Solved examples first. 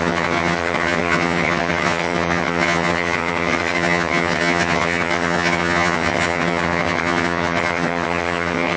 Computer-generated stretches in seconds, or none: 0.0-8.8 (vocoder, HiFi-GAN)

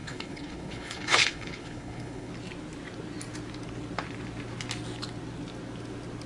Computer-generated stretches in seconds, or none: 0.0-2.3 (codec, HILCodec)

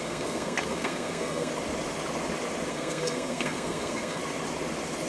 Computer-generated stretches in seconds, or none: 0.0-1.5 (codec, SNAC); 2.7-4.2